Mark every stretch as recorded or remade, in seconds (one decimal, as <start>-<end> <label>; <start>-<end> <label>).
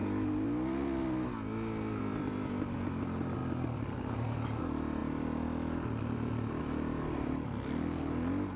0.0-8.6 recorded